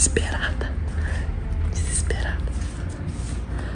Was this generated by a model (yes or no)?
no